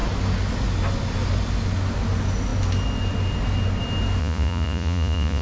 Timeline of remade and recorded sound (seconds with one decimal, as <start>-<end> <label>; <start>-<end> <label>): 0.0-4.2 recorded; 4.2-5.4 remade